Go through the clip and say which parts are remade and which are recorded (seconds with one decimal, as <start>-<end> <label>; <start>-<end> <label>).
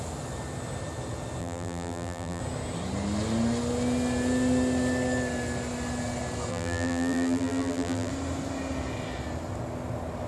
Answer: 0.0-1.4 recorded; 1.4-2.4 remade; 2.4-6.5 recorded; 6.5-8.1 remade; 8.1-10.3 recorded